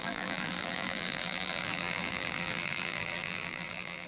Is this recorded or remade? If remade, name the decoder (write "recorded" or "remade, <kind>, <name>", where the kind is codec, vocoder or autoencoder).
remade, vocoder, BigVGAN v2